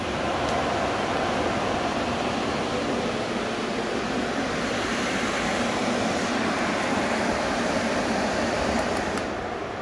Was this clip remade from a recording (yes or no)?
yes